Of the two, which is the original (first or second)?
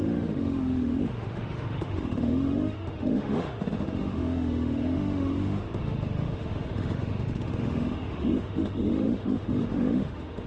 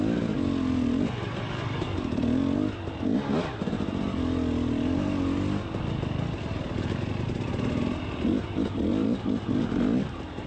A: second